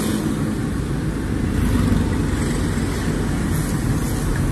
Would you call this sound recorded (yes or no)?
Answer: yes